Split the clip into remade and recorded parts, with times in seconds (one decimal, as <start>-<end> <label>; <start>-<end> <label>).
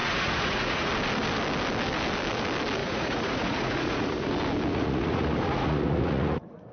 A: 0.0-0.9 remade; 0.9-2.8 recorded; 2.8-4.3 remade; 4.3-4.7 recorded; 4.7-6.7 remade